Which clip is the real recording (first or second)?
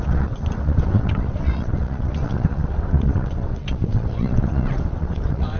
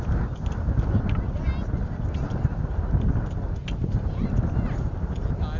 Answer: second